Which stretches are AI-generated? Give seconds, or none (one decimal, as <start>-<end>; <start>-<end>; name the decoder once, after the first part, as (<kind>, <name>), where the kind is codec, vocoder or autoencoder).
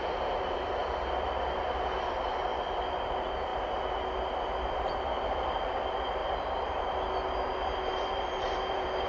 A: 0.0-2.5 (vocoder, BigVGAN v2); 3.1-3.5; 4.7-6.2; 7.9-9.1